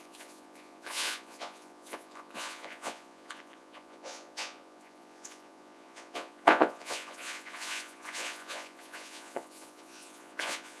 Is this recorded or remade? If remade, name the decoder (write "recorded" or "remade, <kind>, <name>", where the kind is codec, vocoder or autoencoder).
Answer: remade, vocoder, Vocos